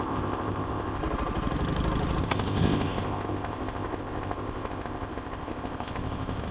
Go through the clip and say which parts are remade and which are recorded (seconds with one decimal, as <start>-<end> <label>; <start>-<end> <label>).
0.0-1.0 remade; 1.0-2.2 recorded; 2.2-6.5 remade

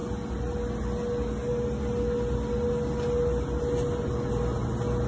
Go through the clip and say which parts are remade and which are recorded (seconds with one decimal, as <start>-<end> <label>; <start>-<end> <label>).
0.0-5.1 recorded

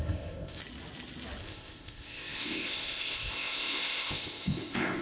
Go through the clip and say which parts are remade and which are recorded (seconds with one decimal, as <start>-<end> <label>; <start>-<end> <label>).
0.0-0.6 remade; 0.6-1.4 recorded; 1.4-5.0 remade

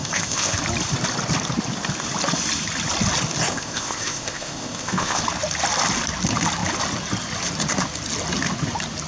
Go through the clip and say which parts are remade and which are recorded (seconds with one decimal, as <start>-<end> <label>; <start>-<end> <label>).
0.0-0.6 remade; 0.6-3.5 recorded; 3.5-5.2 remade; 5.2-9.1 recorded

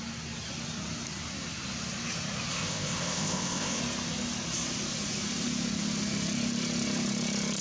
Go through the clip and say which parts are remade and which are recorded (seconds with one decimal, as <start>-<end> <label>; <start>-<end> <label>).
0.0-2.5 recorded; 2.5-3.8 remade; 3.8-7.6 recorded

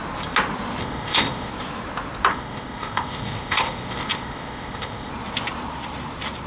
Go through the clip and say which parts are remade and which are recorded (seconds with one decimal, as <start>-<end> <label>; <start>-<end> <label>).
0.0-0.8 recorded; 0.8-1.5 remade; 1.5-2.3 recorded; 2.3-5.1 remade; 5.1-6.5 recorded